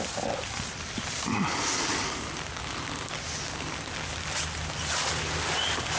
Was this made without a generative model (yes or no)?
yes